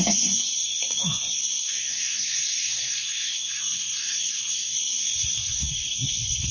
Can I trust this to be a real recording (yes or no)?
no